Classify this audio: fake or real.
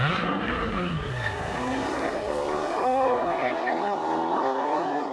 fake